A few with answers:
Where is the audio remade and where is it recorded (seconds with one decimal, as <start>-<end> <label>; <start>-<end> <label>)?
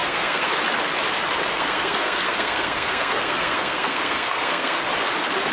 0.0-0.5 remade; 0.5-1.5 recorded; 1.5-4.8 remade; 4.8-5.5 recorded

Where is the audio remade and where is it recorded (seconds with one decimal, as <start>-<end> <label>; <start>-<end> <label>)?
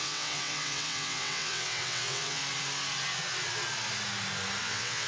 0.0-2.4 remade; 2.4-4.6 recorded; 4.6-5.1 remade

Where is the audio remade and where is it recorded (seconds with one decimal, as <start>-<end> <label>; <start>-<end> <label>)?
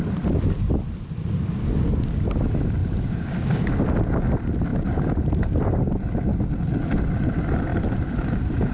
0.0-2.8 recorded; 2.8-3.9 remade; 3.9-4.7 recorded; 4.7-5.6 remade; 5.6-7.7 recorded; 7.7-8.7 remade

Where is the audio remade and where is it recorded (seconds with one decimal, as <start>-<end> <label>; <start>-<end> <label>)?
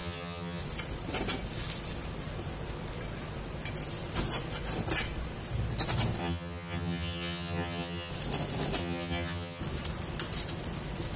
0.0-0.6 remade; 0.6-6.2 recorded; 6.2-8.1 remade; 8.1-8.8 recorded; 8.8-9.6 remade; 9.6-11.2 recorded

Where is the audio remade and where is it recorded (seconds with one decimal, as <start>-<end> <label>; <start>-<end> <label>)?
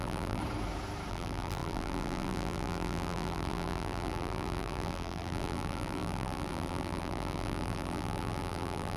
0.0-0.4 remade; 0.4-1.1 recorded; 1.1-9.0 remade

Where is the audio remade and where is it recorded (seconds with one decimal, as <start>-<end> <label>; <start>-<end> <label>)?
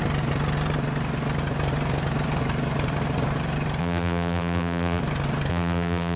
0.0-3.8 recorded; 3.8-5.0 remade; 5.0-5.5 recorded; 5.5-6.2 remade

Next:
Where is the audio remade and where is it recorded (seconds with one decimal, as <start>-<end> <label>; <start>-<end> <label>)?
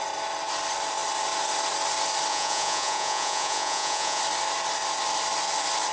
0.0-2.3 recorded; 2.3-4.2 remade; 4.2-5.9 recorded